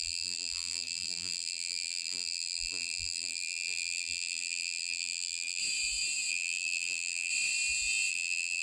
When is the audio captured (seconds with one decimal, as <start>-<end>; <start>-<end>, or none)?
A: 5.6-6.3; 7.3-8.1